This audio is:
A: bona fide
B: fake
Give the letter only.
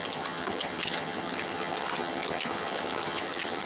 B